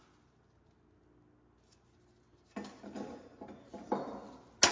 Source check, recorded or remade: recorded